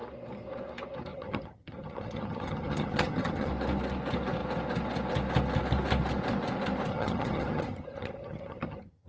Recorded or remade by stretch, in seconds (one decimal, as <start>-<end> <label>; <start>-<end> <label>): 0.0-1.1 recorded; 1.1-3.5 remade; 3.5-6.9 recorded; 6.9-9.1 remade